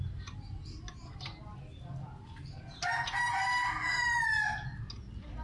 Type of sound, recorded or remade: recorded